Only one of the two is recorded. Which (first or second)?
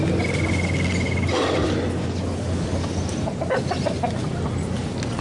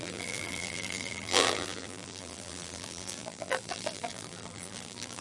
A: first